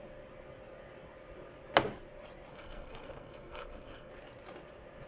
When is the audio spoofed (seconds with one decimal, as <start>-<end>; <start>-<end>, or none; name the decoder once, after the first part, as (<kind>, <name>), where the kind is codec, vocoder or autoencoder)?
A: 2.5-4.1 (codec, SNAC)